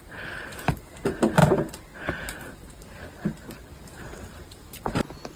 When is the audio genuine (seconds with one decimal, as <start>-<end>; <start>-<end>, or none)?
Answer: 0.0-4.0; 4.6-5.4